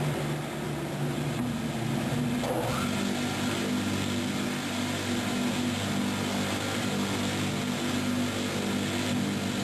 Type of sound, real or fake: real